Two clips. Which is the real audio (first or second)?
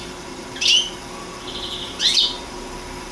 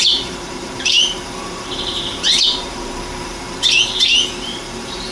first